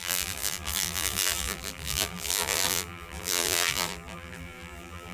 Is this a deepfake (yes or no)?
yes